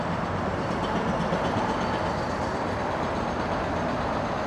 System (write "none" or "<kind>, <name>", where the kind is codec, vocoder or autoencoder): none